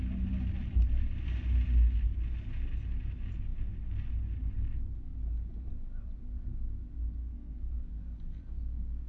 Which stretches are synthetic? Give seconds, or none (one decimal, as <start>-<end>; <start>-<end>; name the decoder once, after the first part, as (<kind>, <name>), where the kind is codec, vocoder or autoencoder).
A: 7.2-7.7 (codec, SNAC)